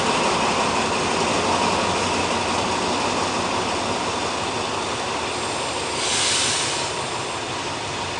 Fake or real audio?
real